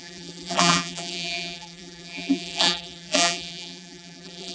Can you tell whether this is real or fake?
fake